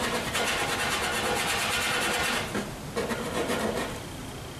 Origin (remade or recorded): recorded